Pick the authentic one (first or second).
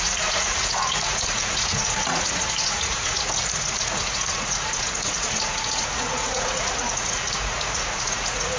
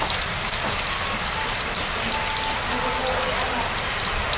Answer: second